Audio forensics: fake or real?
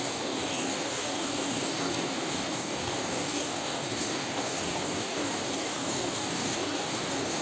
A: fake